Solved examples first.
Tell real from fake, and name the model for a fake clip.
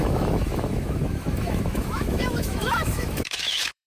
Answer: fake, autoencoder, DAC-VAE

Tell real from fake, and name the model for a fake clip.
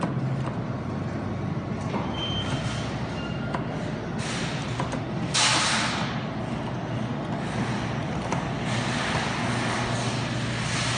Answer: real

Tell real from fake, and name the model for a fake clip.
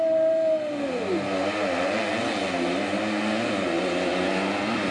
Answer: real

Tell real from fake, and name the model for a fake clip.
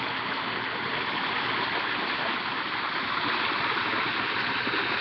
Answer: real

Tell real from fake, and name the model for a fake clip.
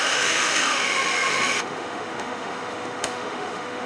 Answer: fake, autoencoder, DAC-VAE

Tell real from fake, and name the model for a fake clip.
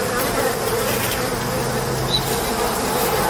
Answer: real